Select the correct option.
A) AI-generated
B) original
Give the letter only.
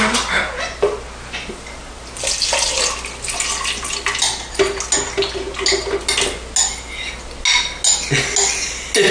B